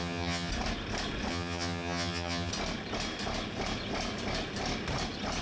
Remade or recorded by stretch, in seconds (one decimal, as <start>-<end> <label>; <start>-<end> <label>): 0.0-0.5 remade; 0.5-1.3 recorded; 1.3-2.5 remade; 2.5-5.4 recorded